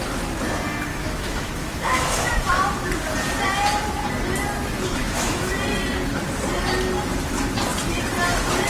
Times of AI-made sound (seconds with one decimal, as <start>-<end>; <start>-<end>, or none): 0.9-2.5; 5.0-5.5